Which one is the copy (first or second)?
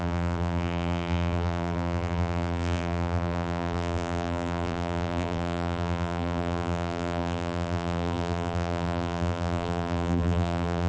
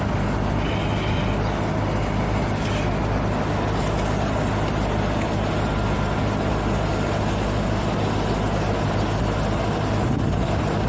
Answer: first